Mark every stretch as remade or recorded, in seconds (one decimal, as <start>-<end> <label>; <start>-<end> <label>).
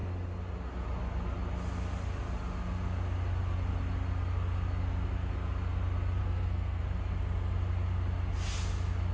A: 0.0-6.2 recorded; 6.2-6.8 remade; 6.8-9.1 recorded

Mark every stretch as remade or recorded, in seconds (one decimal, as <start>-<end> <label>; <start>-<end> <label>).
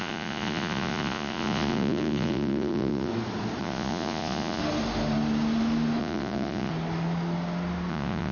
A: 0.0-3.1 remade; 3.1-3.6 recorded; 3.6-4.6 remade; 4.6-6.0 recorded; 6.0-6.7 remade; 6.7-7.9 recorded; 7.9-8.3 remade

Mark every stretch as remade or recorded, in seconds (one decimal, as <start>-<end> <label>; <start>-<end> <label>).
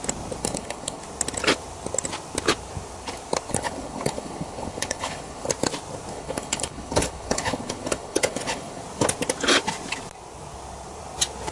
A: 0.0-0.4 recorded; 0.4-1.0 remade; 1.0-3.5 recorded; 3.5-5.5 remade; 5.5-6.1 recorded; 6.1-8.8 remade; 8.8-11.5 recorded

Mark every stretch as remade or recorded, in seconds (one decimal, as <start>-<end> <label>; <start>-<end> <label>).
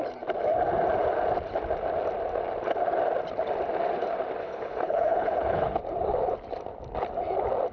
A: 0.0-4.4 recorded; 4.4-5.8 remade; 5.8-7.7 recorded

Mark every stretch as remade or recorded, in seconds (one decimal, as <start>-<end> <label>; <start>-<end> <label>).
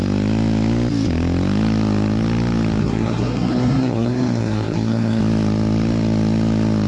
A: 0.0-2.8 recorded; 2.8-5.2 remade; 5.2-6.9 recorded